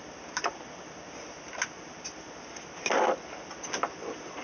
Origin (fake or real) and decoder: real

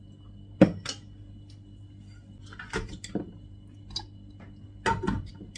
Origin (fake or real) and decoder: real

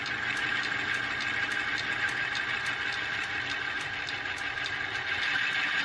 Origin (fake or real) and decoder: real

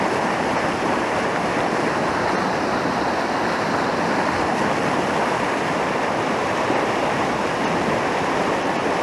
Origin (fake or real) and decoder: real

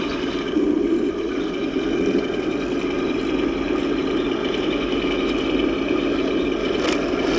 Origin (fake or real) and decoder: real